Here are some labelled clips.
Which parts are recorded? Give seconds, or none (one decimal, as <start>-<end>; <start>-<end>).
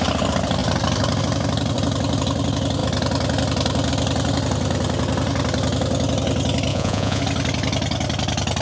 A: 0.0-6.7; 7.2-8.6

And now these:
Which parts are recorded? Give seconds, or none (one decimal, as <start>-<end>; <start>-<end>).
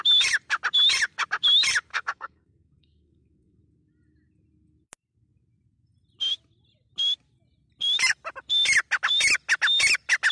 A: 0.0-1.9; 3.6-10.3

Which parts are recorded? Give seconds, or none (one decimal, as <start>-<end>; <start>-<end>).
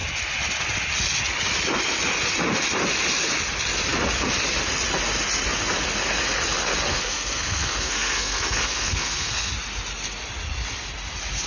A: 0.0-6.9; 9.5-11.5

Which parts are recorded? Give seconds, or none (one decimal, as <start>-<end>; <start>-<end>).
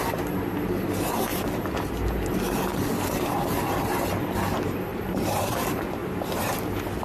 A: 0.0-4.9; 5.5-6.0; 6.6-7.0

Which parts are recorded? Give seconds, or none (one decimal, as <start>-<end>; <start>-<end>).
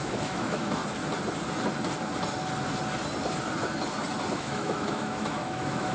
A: 0.8-4.3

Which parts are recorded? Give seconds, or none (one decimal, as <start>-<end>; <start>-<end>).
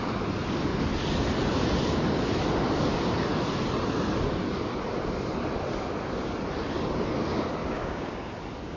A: 0.0-7.6; 8.3-8.8